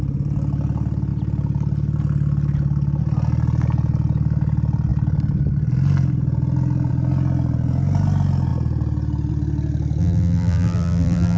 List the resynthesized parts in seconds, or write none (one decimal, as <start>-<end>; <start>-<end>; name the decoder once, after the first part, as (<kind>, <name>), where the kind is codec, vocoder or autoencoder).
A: 10.0-11.4 (vocoder, BigVGAN v2)